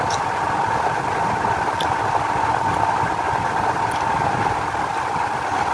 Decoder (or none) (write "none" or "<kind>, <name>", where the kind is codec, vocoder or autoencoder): none